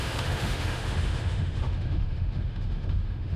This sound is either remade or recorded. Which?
remade